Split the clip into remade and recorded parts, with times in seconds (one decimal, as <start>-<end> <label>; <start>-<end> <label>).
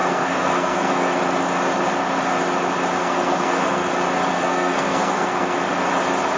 0.0-1.2 remade; 1.2-3.0 recorded; 3.0-3.9 remade; 3.9-4.3 recorded; 4.3-5.6 remade; 5.6-6.4 recorded